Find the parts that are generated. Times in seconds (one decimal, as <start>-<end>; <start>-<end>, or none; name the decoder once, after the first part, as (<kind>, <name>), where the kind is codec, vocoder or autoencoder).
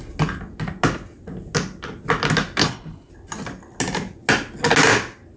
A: 2.6-3.1 (codec, HILCodec)